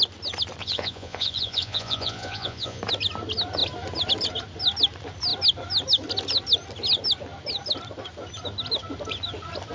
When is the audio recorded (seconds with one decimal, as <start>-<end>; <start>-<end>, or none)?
0.0-0.6; 2.8-9.7